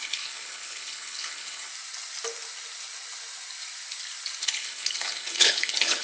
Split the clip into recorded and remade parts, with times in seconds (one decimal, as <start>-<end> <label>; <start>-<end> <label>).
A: 0.0-1.7 remade; 1.7-4.4 recorded; 4.4-6.0 remade